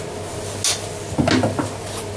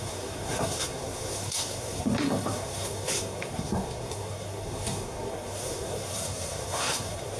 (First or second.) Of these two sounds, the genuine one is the first